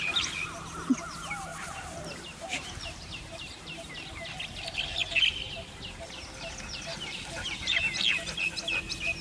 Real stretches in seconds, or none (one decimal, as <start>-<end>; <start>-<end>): 0.0-1.5; 3.9-6.9; 7.8-9.2